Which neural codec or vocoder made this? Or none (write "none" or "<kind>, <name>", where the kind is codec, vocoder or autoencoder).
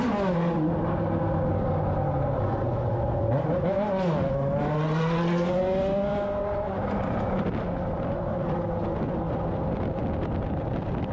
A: none